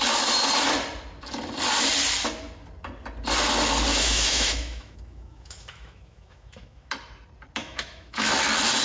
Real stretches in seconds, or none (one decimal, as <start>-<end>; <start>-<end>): 0.0-3.9; 6.9-7.6; 8.3-8.8